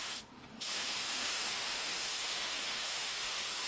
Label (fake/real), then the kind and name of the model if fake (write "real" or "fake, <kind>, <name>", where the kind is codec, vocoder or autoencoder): fake, autoencoder, DAC-VAE